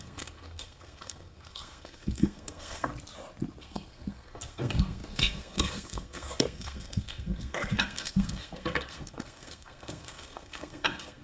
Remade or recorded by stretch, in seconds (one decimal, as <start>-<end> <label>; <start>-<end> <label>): 0.0-2.9 remade; 2.9-3.6 recorded; 3.6-11.2 remade